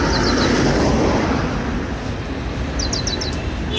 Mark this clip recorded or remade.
recorded